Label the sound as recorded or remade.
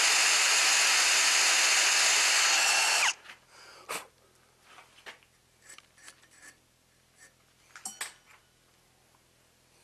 recorded